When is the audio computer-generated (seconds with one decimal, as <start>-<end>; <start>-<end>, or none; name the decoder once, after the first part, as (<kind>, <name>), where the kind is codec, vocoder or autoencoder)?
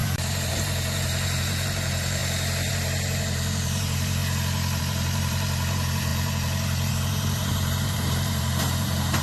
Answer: 0.0-2.2 (vocoder, BigVGAN v2); 2.7-4.2; 4.8-9.2